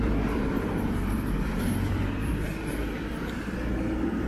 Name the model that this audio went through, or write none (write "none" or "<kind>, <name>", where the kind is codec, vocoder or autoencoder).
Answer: vocoder, BigVGAN v2